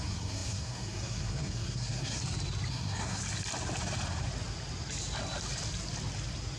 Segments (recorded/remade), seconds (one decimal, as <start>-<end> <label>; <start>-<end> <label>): 0.0-2.2 remade; 2.2-2.7 recorded; 2.7-3.2 remade; 3.2-6.6 recorded